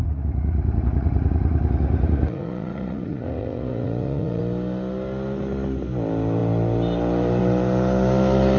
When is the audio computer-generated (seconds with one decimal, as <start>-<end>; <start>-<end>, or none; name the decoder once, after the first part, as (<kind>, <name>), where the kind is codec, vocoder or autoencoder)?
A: 0.0-4.4 (vocoder, Vocos)